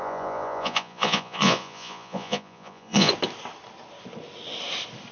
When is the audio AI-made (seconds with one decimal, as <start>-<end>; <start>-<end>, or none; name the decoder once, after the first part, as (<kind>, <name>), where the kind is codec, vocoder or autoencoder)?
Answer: 0.0-3.1 (vocoder, Vocos)